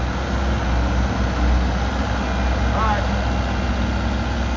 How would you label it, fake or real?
real